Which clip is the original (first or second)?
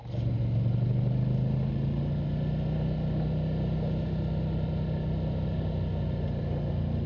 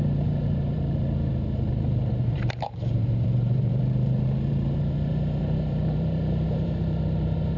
first